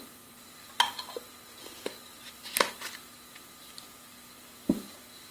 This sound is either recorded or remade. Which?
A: remade